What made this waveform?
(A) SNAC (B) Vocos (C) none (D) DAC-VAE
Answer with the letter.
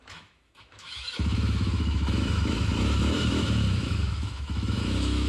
D